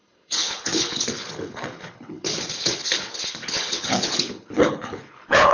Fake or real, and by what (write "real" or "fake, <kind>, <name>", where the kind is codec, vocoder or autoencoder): fake, codec, HILCodec